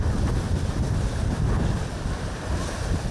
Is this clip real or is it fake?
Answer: real